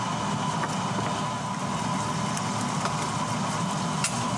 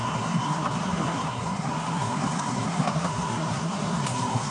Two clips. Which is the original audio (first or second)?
first